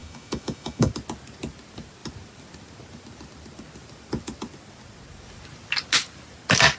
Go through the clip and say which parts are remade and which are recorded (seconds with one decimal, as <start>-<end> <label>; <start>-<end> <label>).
0.0-0.9 remade; 0.9-6.8 recorded